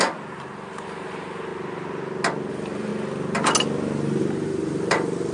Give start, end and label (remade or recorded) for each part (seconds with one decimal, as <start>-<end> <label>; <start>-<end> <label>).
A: 0.0-1.5 remade; 1.5-2.5 recorded; 2.5-2.9 remade; 2.9-4.2 recorded; 4.2-5.3 remade